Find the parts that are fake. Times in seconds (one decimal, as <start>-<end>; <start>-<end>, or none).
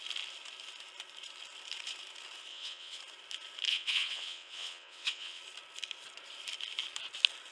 2.5-3.0; 3.7-5.4